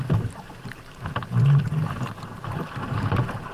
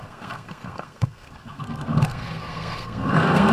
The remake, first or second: second